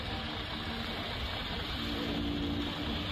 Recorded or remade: recorded